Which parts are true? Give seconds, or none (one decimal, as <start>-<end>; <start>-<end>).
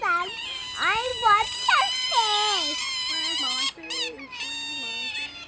0.0-5.5